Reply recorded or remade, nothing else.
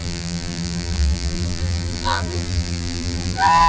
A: remade